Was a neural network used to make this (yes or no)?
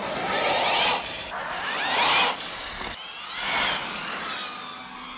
no